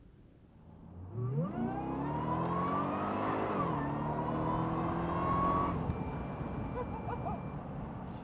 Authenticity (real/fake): real